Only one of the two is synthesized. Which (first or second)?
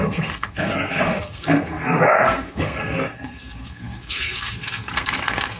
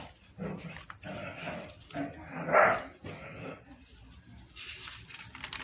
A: first